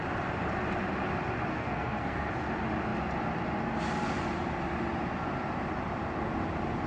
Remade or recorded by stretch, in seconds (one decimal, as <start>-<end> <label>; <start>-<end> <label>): 0.0-1.5 recorded; 1.5-2.3 remade; 2.3-6.9 recorded